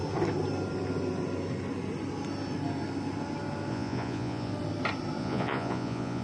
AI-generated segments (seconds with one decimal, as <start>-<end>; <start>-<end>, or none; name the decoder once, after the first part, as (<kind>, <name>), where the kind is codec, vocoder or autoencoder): 3.7-4.5 (vocoder, Vocos); 5.2-6.2